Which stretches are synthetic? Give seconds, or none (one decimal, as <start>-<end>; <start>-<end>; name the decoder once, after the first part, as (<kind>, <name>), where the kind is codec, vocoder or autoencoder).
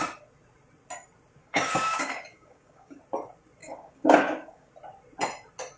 1.4-3.0 (codec, DAC); 3.6-4.7